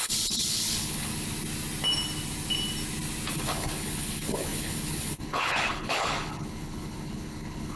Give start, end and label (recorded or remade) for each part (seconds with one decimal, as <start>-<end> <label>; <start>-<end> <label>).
0.0-1.1 remade; 1.1-3.3 recorded; 3.3-7.8 remade